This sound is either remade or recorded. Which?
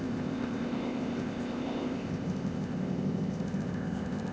remade